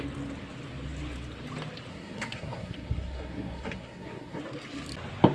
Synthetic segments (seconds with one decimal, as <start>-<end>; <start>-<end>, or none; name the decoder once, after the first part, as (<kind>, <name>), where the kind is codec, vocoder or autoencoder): 1.9-4.4 (codec, SNAC)